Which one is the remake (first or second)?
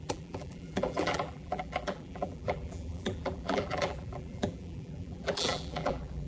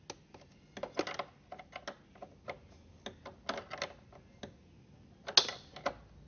first